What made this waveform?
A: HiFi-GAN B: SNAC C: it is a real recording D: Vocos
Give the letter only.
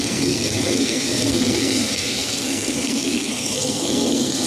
B